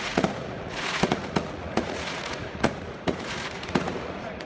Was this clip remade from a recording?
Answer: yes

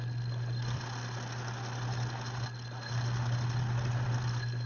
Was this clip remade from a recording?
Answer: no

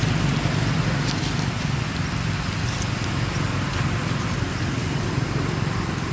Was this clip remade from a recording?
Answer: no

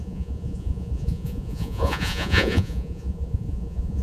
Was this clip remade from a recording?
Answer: yes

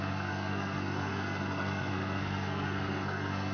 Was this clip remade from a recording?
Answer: yes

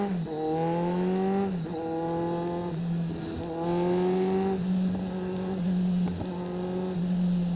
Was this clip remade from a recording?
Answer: no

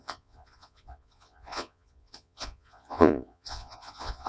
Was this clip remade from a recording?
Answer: yes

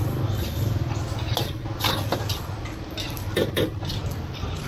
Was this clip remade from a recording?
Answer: no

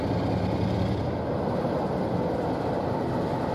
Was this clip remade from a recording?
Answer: no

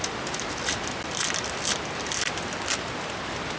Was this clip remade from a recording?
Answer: no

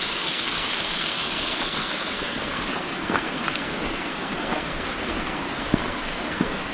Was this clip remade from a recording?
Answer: yes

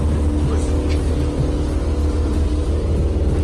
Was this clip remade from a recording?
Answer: no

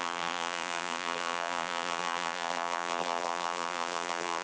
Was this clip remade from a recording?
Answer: yes